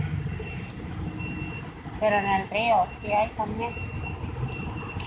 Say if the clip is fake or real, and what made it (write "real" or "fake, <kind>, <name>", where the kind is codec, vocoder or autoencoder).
fake, vocoder, BigVGAN v2